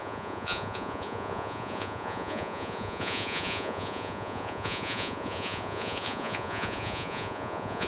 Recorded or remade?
remade